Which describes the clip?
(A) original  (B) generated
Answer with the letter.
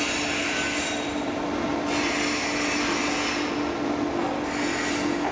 A